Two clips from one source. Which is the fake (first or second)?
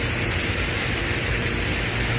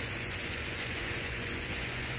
second